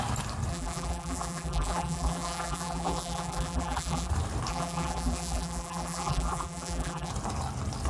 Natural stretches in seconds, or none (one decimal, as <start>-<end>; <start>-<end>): 0.0-0.5; 4.1-4.5; 7.1-7.9

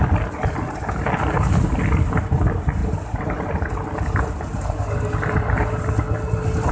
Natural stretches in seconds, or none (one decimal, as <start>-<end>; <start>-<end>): 0.0-2.8; 3.4-6.7

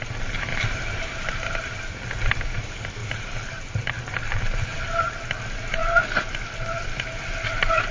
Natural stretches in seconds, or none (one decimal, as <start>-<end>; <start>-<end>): 0.0-0.5; 2.3-3.0; 5.3-7.9

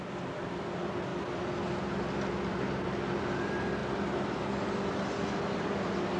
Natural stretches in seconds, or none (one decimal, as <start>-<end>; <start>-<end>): 0.0-6.2

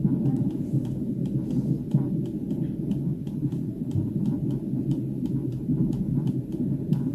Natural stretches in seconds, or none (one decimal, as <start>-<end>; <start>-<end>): 0.0-3.1; 3.9-5.4